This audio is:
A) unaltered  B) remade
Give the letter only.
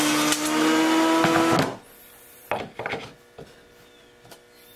A